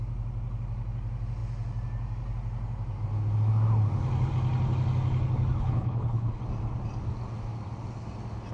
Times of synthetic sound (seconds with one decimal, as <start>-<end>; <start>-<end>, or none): 5.6-6.4